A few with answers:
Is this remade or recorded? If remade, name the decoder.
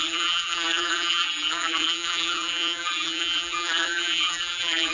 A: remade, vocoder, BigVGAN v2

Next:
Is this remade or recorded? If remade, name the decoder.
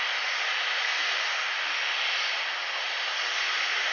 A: recorded